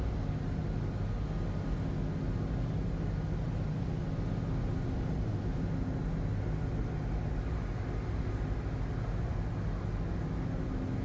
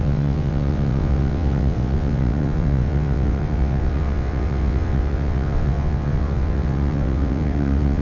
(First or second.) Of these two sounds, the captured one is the first